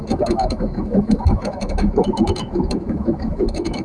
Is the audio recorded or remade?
remade